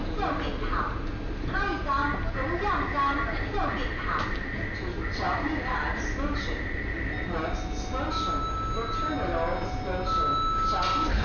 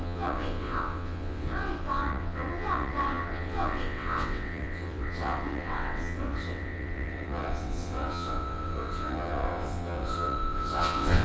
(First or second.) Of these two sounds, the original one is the first